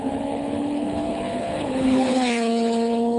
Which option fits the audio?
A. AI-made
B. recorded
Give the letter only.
A